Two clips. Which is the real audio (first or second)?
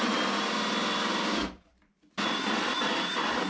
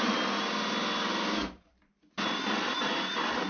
second